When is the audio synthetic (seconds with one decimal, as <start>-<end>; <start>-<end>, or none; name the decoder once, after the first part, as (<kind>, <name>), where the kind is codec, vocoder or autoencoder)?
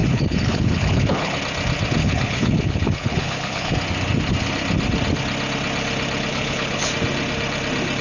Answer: 0.0-1.4 (codec, HILCodec); 2.0-3.7; 6.3-6.9